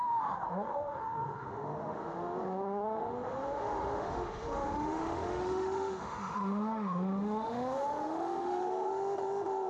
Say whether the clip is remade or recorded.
remade